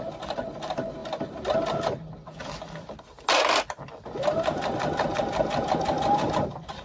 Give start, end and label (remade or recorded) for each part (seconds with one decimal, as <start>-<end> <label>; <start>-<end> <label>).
0.0-6.8 recorded